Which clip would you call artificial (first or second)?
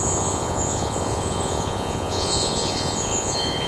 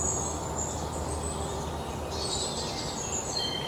first